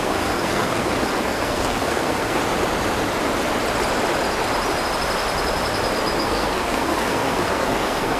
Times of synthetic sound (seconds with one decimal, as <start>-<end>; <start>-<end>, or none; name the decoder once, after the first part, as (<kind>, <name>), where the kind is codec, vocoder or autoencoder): 0.0-2.4 (codec, SNAC); 6.2-8.2

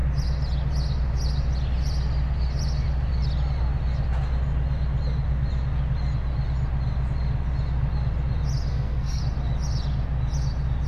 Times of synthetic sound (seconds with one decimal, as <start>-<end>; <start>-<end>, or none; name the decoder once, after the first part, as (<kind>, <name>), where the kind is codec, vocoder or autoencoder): 8.7-9.2 (codec, SNAC)